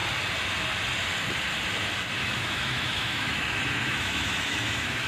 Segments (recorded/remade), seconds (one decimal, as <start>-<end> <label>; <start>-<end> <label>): 0.0-2.1 recorded; 2.1-5.1 remade

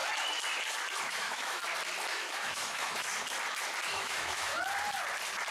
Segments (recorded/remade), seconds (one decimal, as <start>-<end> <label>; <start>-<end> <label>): 0.0-1.0 recorded; 1.0-1.6 remade; 1.6-2.1 recorded; 2.1-3.1 remade; 3.1-3.9 recorded; 3.9-4.5 remade; 4.5-5.5 recorded